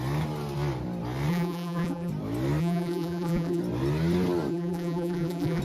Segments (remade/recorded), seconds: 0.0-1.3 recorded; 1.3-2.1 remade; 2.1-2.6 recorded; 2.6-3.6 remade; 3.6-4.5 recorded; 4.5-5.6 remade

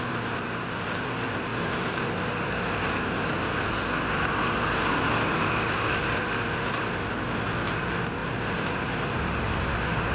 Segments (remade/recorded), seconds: 0.0-8.2 recorded; 8.2-9.0 remade; 9.0-10.1 recorded

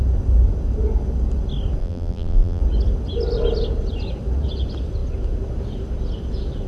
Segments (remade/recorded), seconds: 0.0-1.8 recorded; 1.8-2.6 remade; 2.6-6.7 recorded

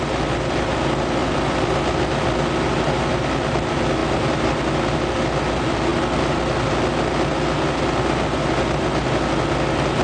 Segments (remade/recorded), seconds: 0.0-1.2 recorded; 1.2-1.8 remade; 1.8-4.0 recorded; 4.0-4.6 remade; 4.6-10.0 recorded

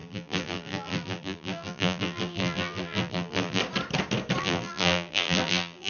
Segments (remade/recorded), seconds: 0.0-3.6 remade; 3.6-4.4 recorded; 4.4-5.9 remade

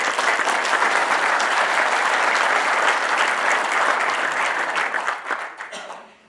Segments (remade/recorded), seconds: 0.0-1.0 recorded; 1.0-4.8 remade; 4.8-6.3 recorded

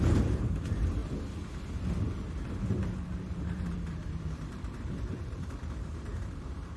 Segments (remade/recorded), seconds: 0.0-1.0 remade; 1.0-2.6 recorded; 2.6-6.8 remade